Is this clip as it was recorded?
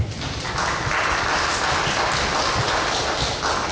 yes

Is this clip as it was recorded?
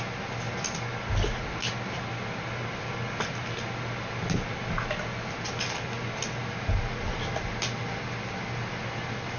yes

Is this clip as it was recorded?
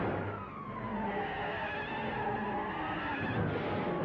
yes